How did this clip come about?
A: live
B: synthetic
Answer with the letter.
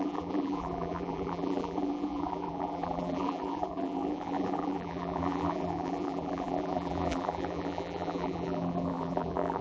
B